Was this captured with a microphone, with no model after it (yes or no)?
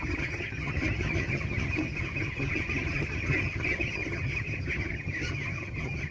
no